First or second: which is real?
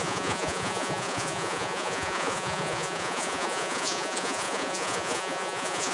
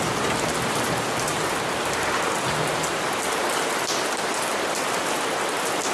second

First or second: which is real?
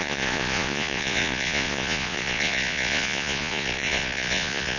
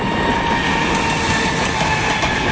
second